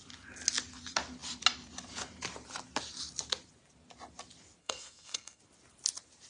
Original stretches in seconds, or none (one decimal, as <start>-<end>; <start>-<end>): 0.0-4.6; 5.4-6.3